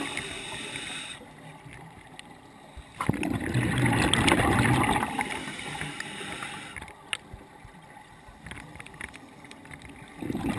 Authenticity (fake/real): real